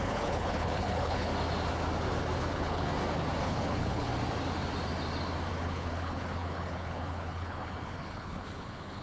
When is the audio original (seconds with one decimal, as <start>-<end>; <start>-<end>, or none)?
1.3-2.4; 2.9-3.4; 4.1-5.5